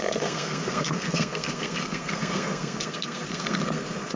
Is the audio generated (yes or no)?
yes